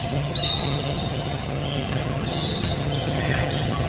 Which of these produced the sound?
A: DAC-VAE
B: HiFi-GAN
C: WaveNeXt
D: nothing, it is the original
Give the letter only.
B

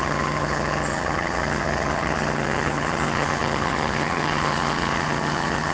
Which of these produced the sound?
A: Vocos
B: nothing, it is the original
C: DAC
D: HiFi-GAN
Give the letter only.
D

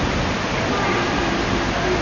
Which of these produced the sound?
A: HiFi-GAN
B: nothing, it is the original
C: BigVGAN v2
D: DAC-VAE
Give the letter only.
B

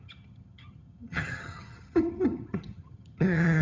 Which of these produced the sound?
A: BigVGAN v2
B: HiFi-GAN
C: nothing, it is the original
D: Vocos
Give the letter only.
B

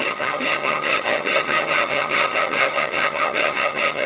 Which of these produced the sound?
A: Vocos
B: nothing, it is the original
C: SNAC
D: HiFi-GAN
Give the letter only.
D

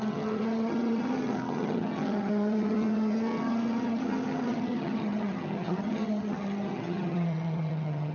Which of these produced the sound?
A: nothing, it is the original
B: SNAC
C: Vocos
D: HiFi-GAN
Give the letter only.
D